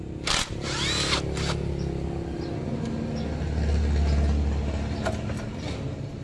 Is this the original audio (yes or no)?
yes